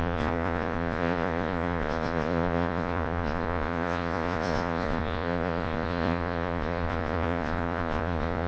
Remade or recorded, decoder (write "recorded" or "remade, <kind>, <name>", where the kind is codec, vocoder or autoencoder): remade, vocoder, Vocos